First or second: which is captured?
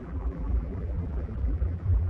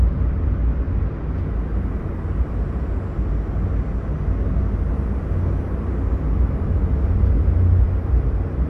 second